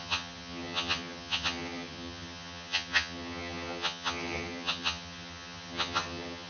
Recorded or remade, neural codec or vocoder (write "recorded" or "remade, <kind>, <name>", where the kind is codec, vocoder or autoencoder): remade, vocoder, HiFi-GAN